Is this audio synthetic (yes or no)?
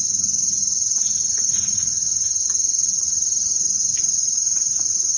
no